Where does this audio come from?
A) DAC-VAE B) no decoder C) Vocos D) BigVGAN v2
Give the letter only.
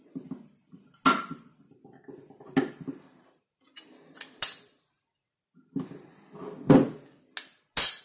B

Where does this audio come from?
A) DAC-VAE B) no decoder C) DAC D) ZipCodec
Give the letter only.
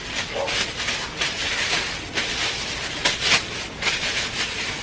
B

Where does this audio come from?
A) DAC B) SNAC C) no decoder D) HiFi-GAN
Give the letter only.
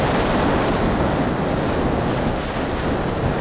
C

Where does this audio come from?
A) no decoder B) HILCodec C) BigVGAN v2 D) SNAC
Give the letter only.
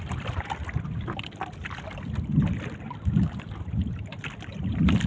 A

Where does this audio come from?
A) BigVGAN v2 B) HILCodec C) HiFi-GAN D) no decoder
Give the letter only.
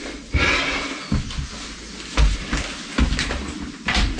D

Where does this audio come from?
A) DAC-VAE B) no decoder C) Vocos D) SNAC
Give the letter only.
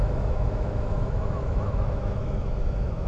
A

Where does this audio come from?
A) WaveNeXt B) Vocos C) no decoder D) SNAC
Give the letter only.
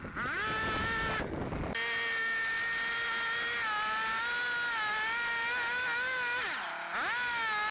C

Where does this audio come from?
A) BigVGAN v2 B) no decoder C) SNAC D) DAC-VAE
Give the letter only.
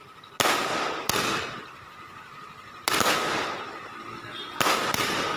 B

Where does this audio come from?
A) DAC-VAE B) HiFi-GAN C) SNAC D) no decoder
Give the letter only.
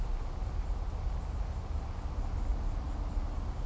D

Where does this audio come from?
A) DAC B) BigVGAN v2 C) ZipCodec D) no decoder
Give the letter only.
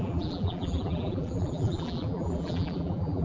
B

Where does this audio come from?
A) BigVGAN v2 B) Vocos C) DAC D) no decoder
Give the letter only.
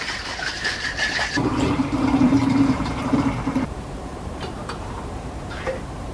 A